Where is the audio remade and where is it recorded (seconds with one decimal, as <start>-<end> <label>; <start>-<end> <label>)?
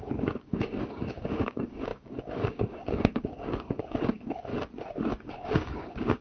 0.0-4.5 remade; 4.5-5.3 recorded; 5.3-6.2 remade